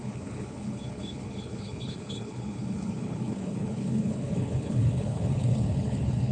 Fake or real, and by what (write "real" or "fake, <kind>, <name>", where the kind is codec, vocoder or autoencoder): fake, codec, HILCodec